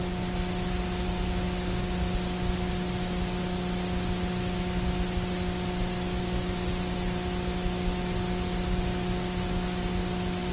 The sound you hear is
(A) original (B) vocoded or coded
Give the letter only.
A